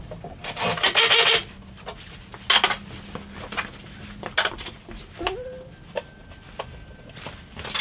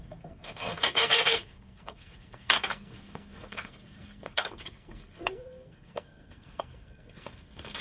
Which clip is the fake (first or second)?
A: second